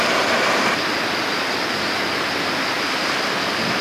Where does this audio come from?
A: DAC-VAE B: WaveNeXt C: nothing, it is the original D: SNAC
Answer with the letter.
C